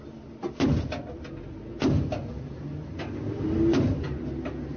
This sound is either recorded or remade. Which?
recorded